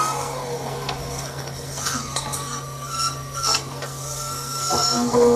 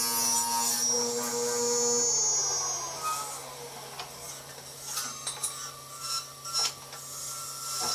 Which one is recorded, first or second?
second